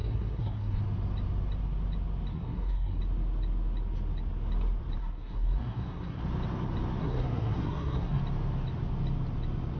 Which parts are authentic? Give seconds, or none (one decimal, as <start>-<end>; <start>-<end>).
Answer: 0.8-2.3; 3.0-5.0; 6.2-7.0; 8.2-9.8